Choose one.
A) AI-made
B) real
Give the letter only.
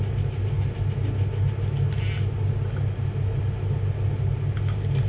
B